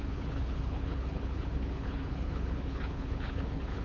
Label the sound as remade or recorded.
remade